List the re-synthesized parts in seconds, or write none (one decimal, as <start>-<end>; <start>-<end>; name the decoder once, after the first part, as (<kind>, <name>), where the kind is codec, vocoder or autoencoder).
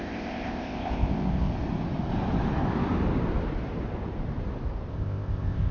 0.0-1.5 (codec, ZipCodec); 4.9-5.7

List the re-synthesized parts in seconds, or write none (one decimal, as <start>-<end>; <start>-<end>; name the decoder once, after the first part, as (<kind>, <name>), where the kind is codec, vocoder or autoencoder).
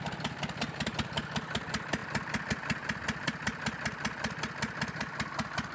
none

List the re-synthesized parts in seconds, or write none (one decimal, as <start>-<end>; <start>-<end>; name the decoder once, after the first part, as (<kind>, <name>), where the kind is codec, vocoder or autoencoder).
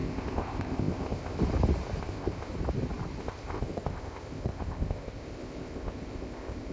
0.0-1.4 (codec, ZipCodec); 2.0-2.5; 3.2-6.7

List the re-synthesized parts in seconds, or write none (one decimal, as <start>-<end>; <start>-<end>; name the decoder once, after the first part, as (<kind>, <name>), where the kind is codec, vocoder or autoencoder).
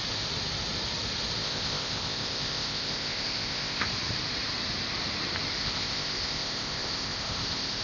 1.4-3.9 (codec, ZipCodec); 5.6-7.8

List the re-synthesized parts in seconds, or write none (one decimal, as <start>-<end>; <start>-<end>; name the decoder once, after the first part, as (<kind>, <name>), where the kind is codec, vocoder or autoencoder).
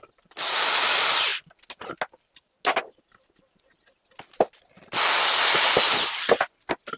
none